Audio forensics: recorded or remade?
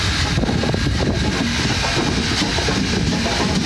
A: recorded